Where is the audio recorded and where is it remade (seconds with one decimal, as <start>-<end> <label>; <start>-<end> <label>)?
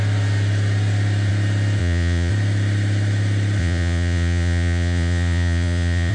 0.0-1.8 recorded; 1.8-2.3 remade; 2.3-3.6 recorded; 3.6-6.1 remade